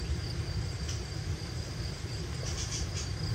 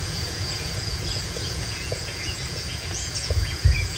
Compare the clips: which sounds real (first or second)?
first